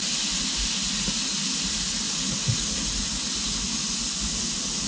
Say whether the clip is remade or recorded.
recorded